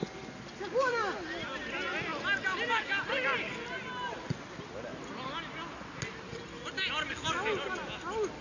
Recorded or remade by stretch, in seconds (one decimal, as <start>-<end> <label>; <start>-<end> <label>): 0.0-8.4 recorded